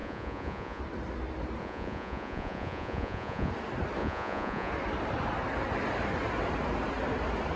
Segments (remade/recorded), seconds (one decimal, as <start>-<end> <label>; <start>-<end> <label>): 0.0-0.8 remade; 0.8-1.6 recorded; 1.6-3.5 remade; 3.5-4.0 recorded; 4.0-4.7 remade; 4.7-7.6 recorded